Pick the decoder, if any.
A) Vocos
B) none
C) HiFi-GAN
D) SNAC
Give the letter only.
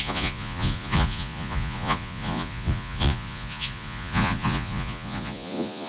A